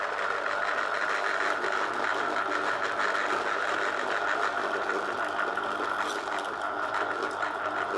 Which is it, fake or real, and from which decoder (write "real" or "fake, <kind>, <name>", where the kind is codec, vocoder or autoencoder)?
real